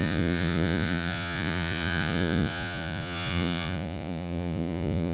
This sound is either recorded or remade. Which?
remade